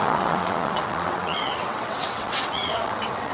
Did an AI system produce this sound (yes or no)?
yes